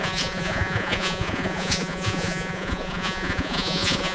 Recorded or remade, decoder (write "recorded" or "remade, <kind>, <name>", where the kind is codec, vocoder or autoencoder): remade, vocoder, Vocos